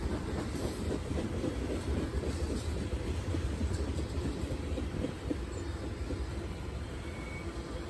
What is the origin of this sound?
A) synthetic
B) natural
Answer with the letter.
A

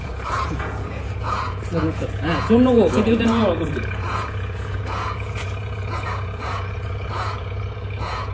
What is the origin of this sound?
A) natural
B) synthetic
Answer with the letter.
B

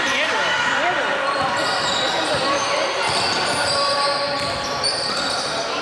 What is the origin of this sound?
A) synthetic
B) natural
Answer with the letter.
B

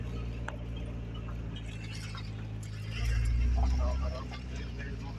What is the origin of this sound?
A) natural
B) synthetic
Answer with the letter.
A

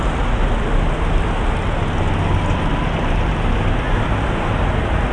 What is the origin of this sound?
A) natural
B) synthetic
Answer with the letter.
A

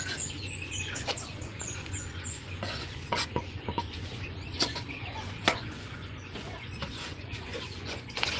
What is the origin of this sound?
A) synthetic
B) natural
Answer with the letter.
A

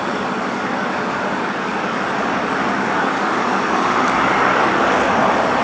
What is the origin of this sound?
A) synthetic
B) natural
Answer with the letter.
A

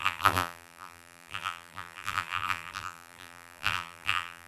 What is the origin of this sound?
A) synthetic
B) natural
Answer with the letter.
A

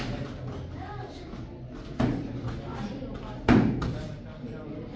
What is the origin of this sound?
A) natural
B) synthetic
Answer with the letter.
A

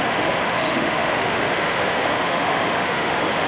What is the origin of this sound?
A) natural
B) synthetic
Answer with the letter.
B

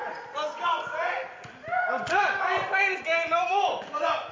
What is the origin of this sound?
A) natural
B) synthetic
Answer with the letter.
A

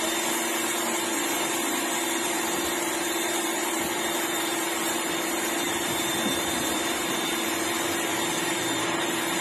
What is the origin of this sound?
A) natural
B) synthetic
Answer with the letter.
B